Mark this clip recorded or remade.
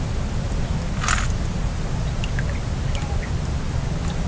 recorded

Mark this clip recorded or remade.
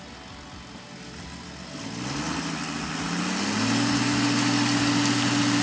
recorded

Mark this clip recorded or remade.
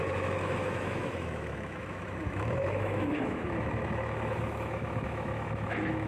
remade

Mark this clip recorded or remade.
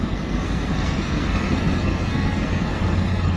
remade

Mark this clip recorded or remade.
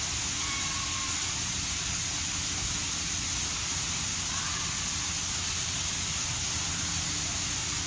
recorded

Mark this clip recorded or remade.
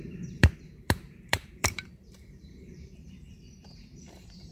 remade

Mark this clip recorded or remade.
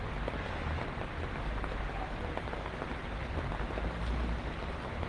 recorded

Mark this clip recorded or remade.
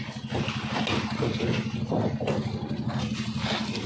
recorded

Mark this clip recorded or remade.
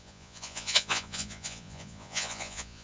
remade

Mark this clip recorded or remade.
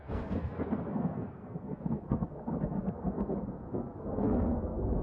remade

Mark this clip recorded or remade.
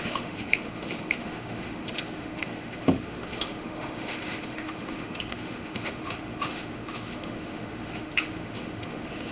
remade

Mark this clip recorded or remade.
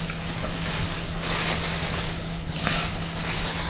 remade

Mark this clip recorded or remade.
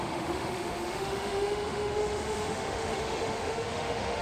remade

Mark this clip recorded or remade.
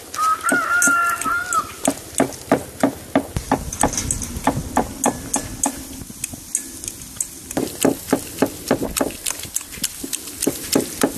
recorded